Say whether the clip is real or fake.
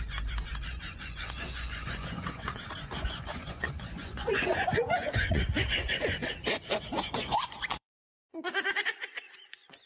fake